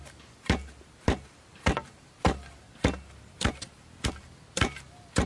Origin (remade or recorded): recorded